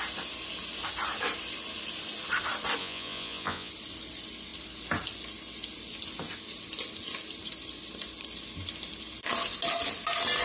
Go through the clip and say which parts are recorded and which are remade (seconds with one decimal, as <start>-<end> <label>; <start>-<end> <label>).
0.0-2.8 recorded; 2.8-3.7 remade; 3.7-10.4 recorded